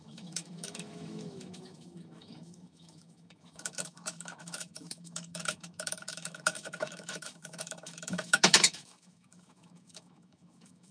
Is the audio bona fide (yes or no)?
no